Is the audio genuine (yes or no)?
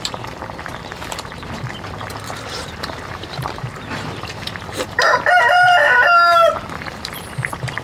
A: no